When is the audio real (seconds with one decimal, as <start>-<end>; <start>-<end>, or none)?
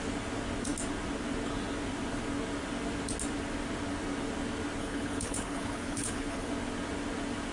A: 0.0-4.8; 6.5-7.5